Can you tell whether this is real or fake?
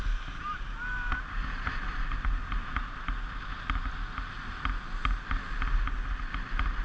real